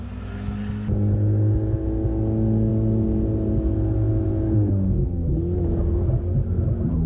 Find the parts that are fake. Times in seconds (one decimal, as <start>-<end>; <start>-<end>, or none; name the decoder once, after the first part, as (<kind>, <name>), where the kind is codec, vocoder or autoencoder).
none